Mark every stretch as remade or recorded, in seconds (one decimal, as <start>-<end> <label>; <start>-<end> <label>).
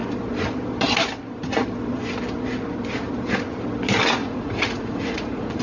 0.0-4.2 recorded; 4.2-5.6 remade